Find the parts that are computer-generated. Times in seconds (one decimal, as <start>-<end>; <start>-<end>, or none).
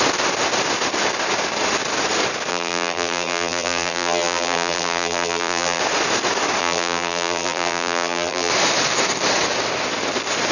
2.5-5.8; 6.6-8.5